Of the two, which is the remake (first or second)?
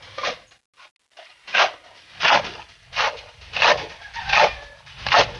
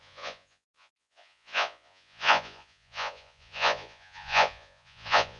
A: second